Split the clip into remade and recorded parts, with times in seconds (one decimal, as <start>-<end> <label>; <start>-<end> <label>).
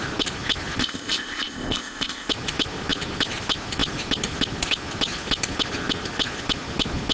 0.0-0.8 recorded; 0.8-2.3 remade; 2.3-7.1 recorded